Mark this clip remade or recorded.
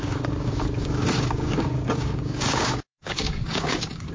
remade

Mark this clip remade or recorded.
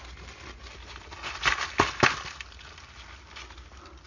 recorded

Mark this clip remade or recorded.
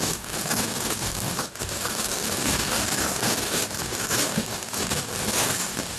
remade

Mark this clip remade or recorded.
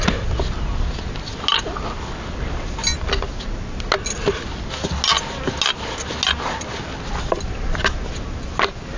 recorded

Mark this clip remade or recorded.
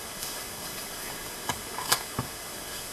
remade